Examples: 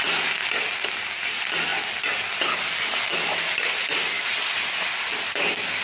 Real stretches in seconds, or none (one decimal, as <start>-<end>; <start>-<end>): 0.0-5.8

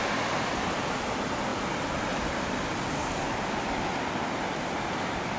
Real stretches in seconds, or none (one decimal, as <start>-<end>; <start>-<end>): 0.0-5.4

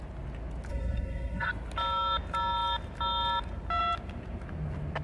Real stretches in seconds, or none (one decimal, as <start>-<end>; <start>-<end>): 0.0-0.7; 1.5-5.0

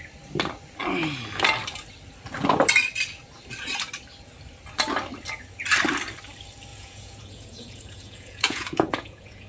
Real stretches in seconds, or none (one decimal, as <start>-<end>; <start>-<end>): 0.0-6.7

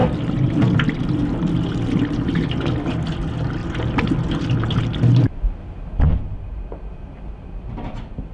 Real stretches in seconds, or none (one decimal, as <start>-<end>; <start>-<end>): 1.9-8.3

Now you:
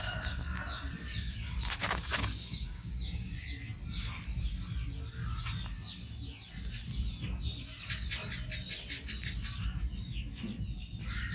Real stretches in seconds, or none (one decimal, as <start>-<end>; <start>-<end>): 0.0-1.8; 3.3-11.3

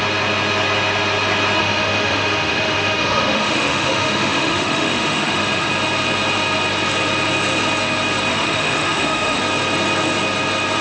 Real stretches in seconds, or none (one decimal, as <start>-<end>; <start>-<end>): 0.0-1.6; 5.7-8.3; 9.4-10.8